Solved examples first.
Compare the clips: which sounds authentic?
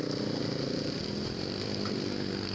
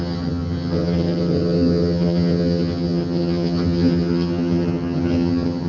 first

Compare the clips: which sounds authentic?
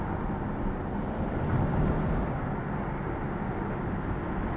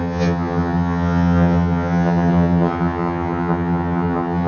first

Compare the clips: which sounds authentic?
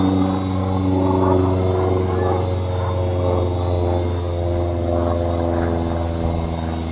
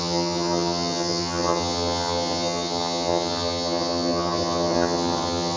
first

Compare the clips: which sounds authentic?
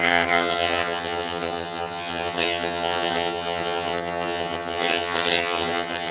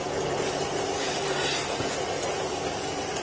second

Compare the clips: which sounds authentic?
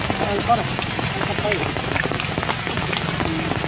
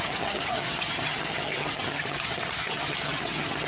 first